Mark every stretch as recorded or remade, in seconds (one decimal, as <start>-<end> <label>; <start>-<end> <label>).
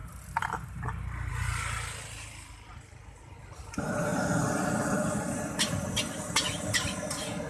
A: 0.0-7.5 recorded